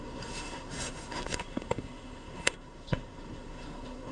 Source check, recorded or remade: remade